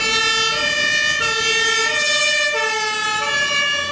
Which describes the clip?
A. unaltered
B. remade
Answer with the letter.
A